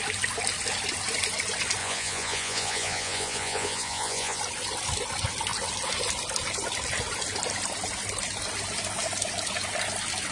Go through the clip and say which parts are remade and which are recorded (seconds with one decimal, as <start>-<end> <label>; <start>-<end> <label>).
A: 0.0-1.8 recorded; 1.8-4.4 remade; 4.4-10.3 recorded